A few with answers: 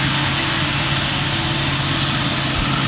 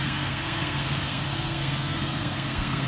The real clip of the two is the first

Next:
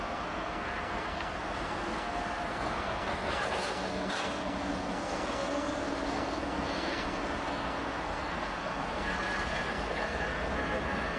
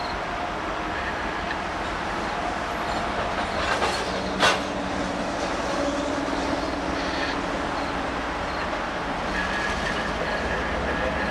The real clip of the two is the second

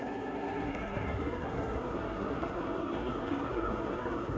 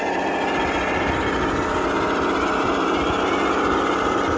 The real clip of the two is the second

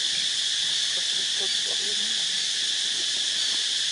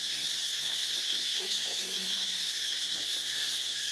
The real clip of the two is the first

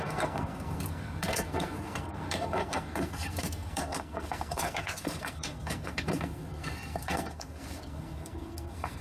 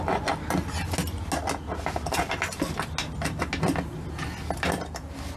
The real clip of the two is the second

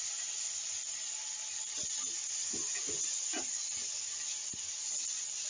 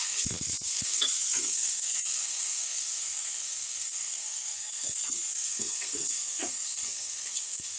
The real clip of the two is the first